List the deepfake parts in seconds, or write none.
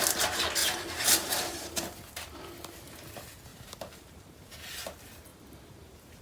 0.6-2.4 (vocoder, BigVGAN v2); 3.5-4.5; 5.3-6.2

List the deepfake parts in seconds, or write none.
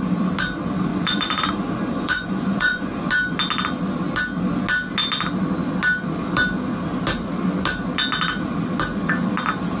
0.9-3.0 (vocoder, Vocos)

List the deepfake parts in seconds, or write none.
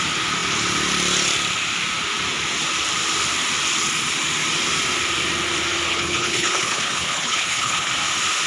5.9-7.9 (codec, HILCodec)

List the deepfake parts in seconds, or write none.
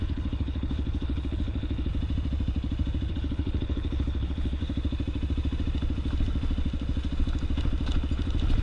0.0-1.9 (codec, HILCodec); 3.1-4.6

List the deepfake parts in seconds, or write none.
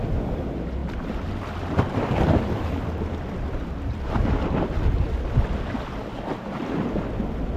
0.0-6.0 (vocoder, BigVGAN v2); 6.6-7.6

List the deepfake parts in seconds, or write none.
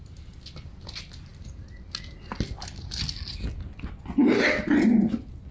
none